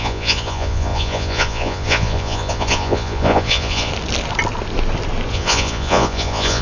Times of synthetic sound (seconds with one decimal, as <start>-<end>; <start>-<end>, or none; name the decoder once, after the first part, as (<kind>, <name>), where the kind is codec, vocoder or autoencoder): 0.0-3.9 (vocoder, Vocos); 5.3-6.6